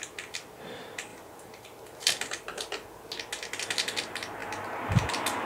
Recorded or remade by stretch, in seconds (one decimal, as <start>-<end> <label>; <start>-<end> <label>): 0.0-1.1 recorded; 1.1-3.1 remade; 3.1-5.5 recorded